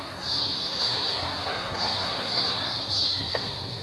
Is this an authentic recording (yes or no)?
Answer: no